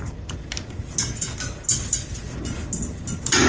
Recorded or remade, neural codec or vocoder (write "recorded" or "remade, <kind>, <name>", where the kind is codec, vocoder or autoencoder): recorded